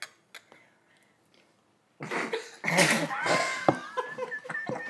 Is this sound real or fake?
real